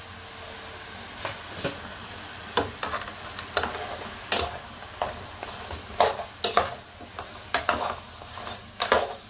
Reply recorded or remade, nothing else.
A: recorded